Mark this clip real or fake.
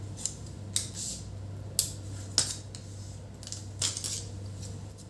real